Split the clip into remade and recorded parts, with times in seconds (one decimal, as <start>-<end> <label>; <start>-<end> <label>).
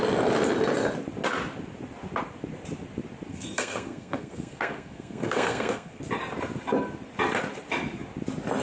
0.0-3.3 recorded; 3.3-6.0 remade; 6.0-8.6 recorded